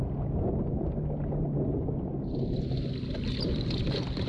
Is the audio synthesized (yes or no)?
no